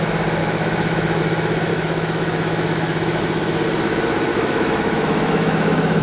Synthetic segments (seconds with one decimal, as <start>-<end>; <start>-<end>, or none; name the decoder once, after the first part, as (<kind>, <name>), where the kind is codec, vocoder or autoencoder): 0.4-1.2 (autoencoder, DAC-VAE); 1.7-3.2; 4.3-6.0